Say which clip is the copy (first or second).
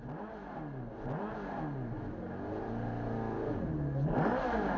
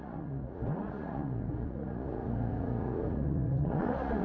second